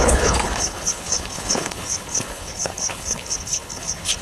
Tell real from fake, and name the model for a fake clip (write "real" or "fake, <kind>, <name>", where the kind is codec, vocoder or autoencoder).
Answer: fake, codec, HILCodec